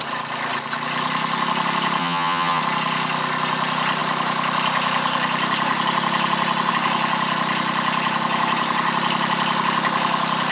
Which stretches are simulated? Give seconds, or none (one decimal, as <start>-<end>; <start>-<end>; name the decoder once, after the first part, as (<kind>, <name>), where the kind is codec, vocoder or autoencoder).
2.0-2.6 (vocoder, HiFi-GAN)